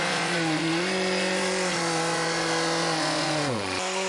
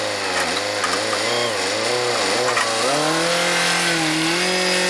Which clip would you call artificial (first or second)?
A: first